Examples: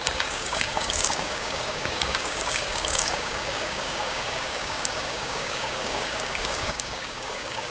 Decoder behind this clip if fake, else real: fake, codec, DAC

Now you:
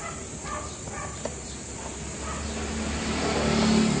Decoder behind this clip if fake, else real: real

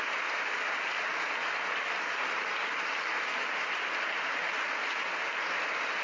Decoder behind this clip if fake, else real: real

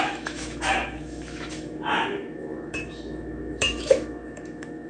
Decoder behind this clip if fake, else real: fake, autoencoder, DAC-VAE